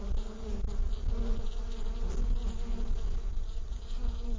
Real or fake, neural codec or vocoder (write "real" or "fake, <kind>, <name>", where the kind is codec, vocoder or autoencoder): real